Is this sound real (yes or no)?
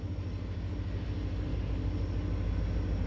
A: yes